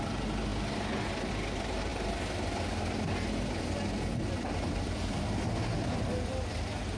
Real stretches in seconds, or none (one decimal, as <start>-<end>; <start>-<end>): 0.0-7.0

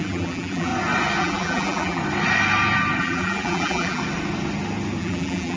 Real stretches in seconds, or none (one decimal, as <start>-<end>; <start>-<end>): 0.7-1.2; 2.0-3.0; 4.0-5.0